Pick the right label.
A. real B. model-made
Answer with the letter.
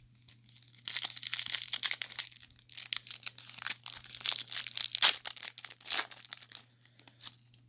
A